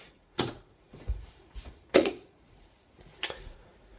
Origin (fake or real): fake